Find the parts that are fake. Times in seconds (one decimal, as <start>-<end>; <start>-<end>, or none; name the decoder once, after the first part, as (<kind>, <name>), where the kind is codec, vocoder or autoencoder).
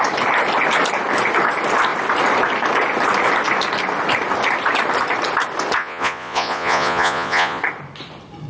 5.8-7.6 (vocoder, Vocos)